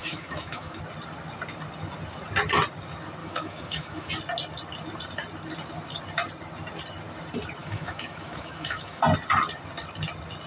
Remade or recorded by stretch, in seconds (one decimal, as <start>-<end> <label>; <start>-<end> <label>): 0.0-0.8 remade; 0.8-3.2 recorded; 3.2-4.1 remade; 4.1-7.6 recorded; 7.6-9.0 remade; 9.0-10.5 recorded